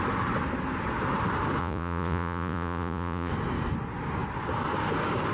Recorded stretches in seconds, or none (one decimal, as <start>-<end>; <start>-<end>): 0.0-1.6; 3.3-5.3